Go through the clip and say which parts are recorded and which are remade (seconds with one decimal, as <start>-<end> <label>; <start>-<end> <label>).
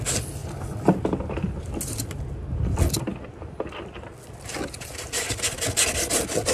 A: 0.0-6.5 recorded